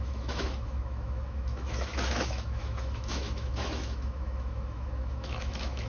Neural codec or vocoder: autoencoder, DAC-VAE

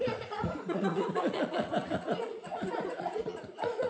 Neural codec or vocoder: vocoder, Vocos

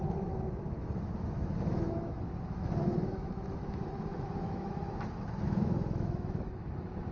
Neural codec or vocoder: autoencoder, DAC-VAE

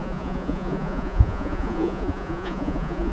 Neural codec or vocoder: vocoder, Vocos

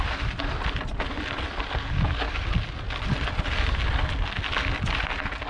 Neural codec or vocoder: none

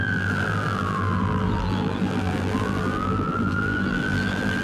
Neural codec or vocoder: vocoder, BigVGAN v2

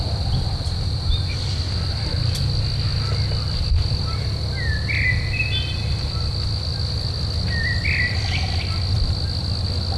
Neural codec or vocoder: none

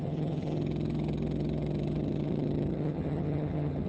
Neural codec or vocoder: vocoder, HiFi-GAN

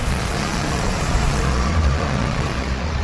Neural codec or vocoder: vocoder, Vocos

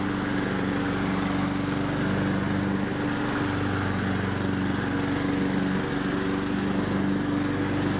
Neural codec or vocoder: none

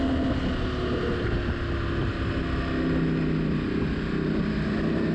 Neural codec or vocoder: none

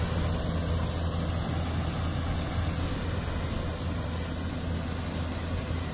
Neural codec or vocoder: none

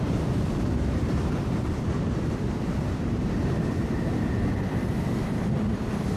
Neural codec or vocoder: vocoder, BigVGAN v2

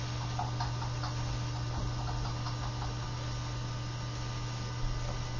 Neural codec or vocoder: none